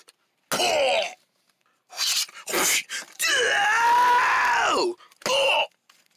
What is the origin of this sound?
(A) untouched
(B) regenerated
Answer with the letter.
A